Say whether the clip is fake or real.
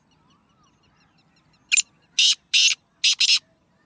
real